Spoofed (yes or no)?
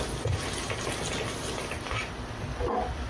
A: no